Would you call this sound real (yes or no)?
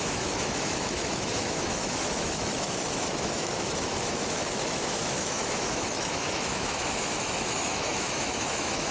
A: no